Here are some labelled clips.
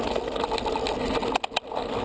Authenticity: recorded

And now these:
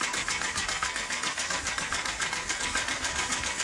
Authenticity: remade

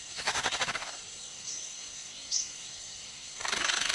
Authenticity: remade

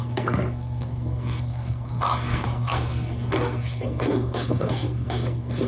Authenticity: remade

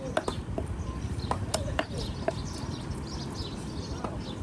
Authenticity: recorded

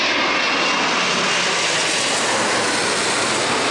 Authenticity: recorded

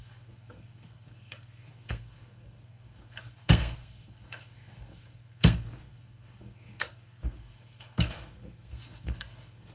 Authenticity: remade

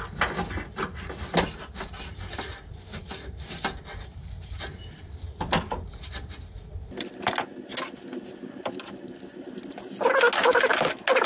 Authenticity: recorded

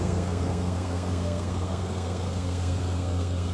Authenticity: remade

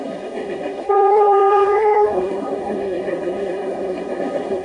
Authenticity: remade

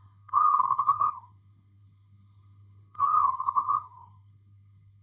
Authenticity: remade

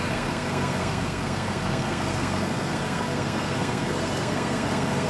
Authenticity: remade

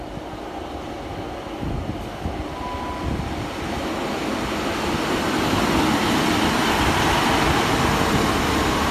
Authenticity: recorded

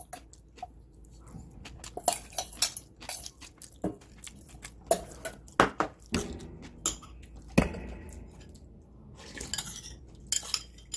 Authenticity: recorded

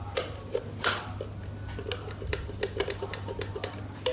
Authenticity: recorded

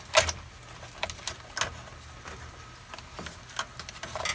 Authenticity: recorded